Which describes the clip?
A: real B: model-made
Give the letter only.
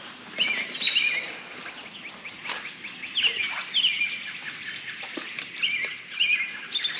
A